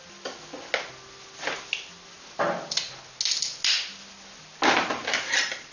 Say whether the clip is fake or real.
real